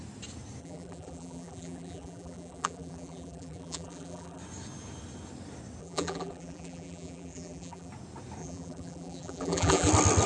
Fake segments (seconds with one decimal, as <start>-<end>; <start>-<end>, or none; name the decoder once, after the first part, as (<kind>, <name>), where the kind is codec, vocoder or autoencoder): 0.6-4.4 (vocoder, BigVGAN v2); 5.8-7.9; 8.4-9.9